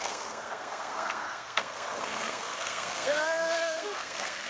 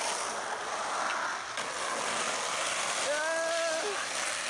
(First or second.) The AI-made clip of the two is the first